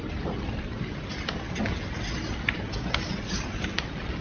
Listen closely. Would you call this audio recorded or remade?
recorded